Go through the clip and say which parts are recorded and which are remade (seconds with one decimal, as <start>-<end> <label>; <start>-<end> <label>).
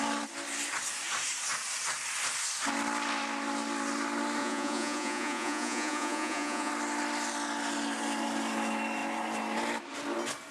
0.0-4.4 recorded; 4.4-6.7 remade; 6.7-10.5 recorded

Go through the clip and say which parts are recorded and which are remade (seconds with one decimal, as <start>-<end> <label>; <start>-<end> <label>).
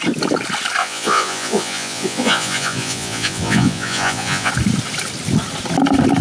0.0-0.8 recorded; 0.8-4.5 remade; 4.5-6.2 recorded